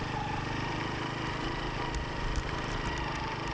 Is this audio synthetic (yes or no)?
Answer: yes